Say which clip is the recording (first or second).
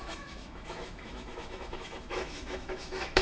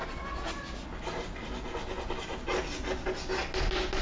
second